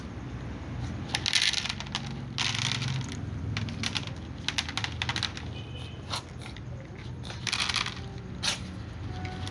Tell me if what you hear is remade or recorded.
recorded